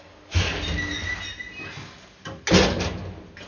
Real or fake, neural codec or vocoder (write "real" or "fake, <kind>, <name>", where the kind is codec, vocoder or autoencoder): real